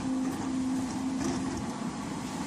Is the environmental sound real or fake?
real